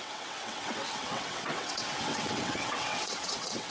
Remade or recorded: remade